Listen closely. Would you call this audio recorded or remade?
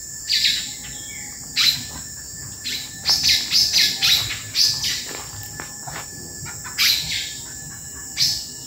recorded